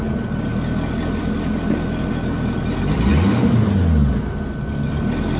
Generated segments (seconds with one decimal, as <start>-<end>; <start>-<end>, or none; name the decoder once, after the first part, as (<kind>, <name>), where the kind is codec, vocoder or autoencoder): none